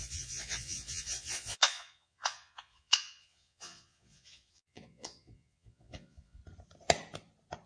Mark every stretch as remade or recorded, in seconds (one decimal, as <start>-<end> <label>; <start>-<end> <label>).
0.0-6.4 remade; 6.4-7.7 recorded